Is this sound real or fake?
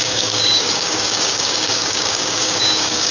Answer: fake